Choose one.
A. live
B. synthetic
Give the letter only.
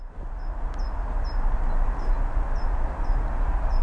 A